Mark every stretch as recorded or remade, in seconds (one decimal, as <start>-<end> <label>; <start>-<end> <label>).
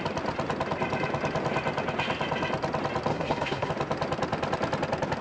0.0-3.1 recorded; 3.1-3.7 remade; 3.7-5.2 recorded